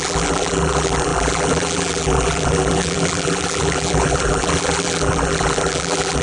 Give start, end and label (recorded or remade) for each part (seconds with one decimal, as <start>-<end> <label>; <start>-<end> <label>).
0.0-6.2 remade